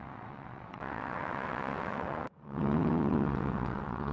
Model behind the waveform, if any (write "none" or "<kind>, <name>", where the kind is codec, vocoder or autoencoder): vocoder, WaveNeXt